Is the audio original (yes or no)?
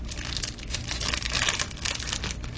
yes